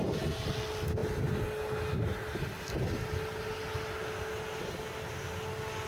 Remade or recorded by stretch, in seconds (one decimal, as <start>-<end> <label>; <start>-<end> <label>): 0.0-5.9 recorded